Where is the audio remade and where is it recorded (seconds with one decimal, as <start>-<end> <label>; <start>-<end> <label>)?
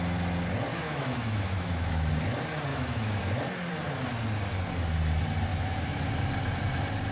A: 0.0-0.7 recorded; 0.7-2.1 remade; 2.1-2.7 recorded; 2.7-3.2 remade; 3.2-5.5 recorded; 5.5-6.1 remade; 6.1-7.1 recorded